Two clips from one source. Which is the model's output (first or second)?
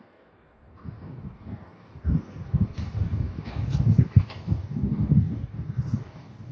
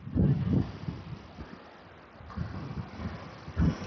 first